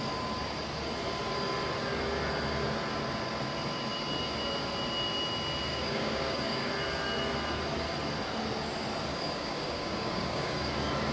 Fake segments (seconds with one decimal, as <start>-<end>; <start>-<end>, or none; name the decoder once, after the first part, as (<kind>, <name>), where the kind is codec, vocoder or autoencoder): 5.7-6.7 (codec, DAC); 9.1-10.7

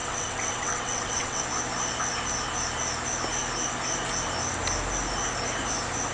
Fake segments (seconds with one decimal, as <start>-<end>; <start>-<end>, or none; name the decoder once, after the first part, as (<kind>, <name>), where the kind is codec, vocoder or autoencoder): 0.0-1.4 (vocoder, WaveNeXt)

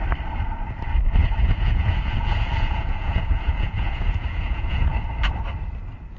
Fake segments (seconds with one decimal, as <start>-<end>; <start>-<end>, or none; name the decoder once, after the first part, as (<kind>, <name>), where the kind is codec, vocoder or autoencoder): 1.2-4.9 (vocoder, Vocos)

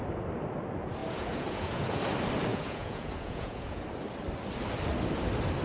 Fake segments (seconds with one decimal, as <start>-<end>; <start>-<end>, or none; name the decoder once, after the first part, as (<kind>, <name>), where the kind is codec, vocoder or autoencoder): 1.0-2.0 (vocoder, Vocos); 2.5-3.8

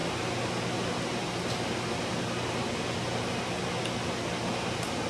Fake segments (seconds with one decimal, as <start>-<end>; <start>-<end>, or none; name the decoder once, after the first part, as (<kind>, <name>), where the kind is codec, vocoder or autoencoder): none

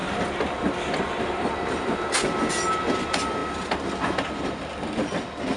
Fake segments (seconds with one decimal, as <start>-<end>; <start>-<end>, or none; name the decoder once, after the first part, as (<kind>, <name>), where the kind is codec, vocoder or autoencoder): none

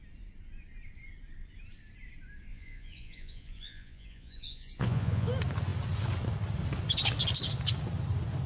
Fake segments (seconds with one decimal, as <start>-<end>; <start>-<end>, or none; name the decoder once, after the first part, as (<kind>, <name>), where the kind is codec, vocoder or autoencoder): 2.5-5.3 (vocoder, Vocos)